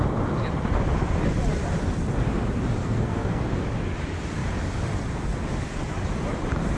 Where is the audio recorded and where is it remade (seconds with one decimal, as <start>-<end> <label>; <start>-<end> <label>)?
0.0-2.8 recorded; 2.8-3.5 remade; 3.5-6.8 recorded